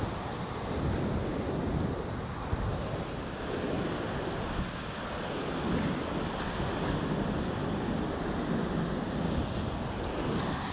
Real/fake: real